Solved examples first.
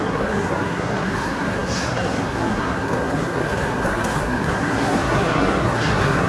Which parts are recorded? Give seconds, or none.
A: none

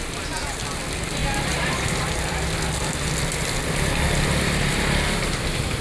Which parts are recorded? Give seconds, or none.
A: 0.0-5.8

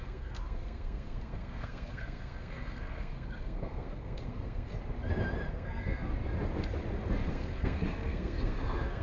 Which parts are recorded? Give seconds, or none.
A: 4.7-5.5; 6.1-7.3

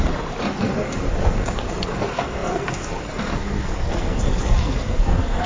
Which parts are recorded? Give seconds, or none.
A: 0.0-0.6

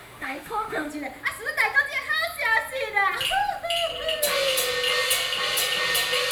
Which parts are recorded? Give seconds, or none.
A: 0.9-6.3

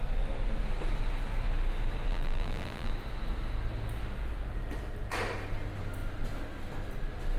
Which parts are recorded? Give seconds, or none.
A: 0.0-2.1; 2.9-7.4

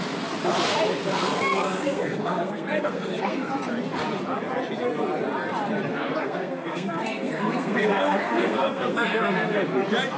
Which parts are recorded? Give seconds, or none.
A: 0.0-1.1; 3.5-5.9; 9.6-10.2